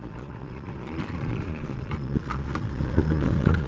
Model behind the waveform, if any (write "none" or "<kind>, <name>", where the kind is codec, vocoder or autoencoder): vocoder, Vocos